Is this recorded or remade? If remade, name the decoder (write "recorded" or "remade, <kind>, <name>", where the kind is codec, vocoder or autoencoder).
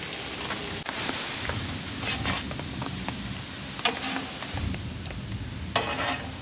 recorded